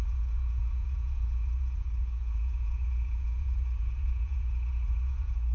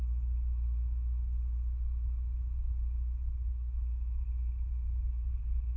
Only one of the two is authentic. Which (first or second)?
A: second